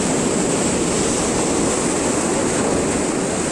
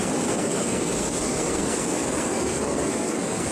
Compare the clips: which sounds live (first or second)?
first